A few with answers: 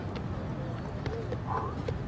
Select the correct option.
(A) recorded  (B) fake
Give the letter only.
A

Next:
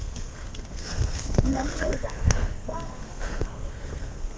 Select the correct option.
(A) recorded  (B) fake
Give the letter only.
B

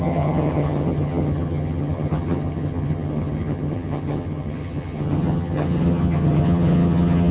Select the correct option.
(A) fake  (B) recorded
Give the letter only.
A